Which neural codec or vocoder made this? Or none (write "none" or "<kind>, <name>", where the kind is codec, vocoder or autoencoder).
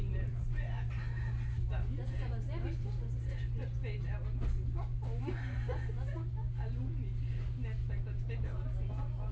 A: none